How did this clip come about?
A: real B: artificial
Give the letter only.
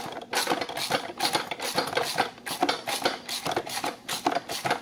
A